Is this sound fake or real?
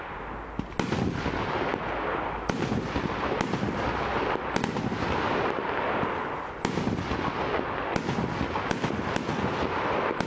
real